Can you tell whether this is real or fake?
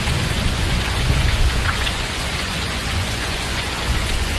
fake